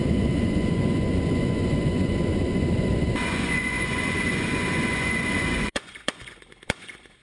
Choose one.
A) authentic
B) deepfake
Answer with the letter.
B